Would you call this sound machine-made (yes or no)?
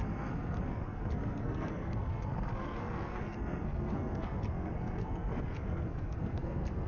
yes